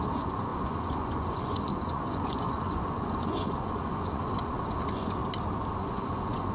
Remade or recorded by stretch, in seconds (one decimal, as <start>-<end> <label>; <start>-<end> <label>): 0.0-5.2 remade; 5.2-5.7 recorded; 5.7-6.5 remade